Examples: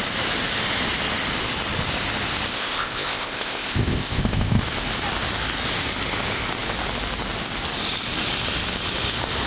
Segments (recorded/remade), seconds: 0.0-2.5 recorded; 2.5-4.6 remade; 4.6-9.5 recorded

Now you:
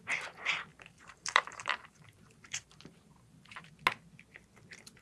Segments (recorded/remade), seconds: 0.0-0.7 recorded; 0.7-3.7 remade; 3.7-5.0 recorded

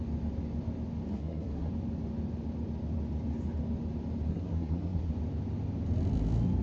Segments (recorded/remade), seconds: 0.0-1.1 recorded; 1.1-1.7 remade; 1.7-4.3 recorded; 4.3-5.1 remade; 5.1-6.6 recorded

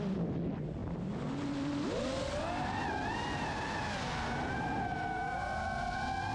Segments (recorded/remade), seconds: 0.0-6.3 recorded